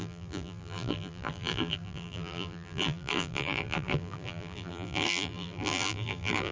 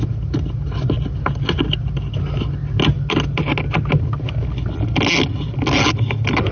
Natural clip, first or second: second